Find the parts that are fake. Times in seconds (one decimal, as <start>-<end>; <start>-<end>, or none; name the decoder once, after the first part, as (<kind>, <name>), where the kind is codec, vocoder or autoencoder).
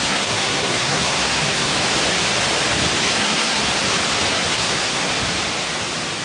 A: 0.0-1.7 (codec, SNAC); 3.1-3.6; 4.3-5.1